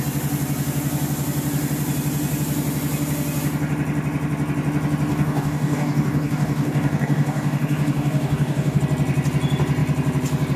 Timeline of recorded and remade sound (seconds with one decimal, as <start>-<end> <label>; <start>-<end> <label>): 0.0-5.1 recorded; 5.1-8.8 remade; 8.8-10.6 recorded